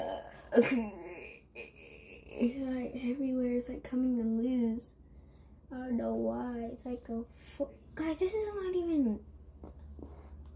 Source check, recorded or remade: recorded